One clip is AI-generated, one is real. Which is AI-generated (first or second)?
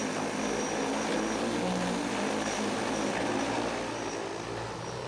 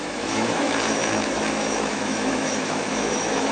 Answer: second